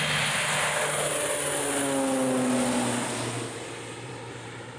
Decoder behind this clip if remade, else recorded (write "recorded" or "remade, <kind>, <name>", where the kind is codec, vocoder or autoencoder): recorded